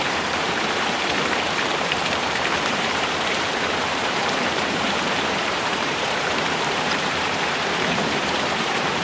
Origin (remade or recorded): remade